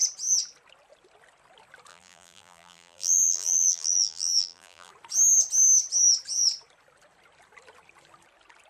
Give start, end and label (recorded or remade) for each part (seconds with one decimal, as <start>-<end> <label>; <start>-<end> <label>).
0.0-1.9 recorded; 1.9-4.9 remade; 4.9-8.7 recorded